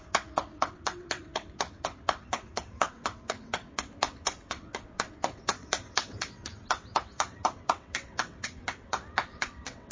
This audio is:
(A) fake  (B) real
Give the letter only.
A